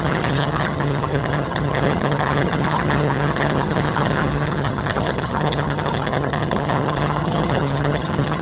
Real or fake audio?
fake